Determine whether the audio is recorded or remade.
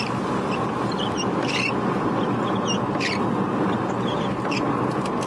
recorded